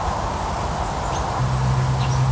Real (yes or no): yes